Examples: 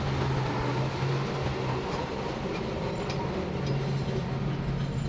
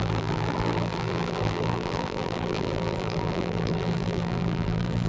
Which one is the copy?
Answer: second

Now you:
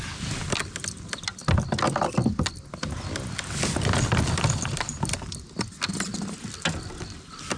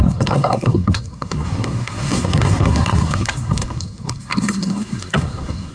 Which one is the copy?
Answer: second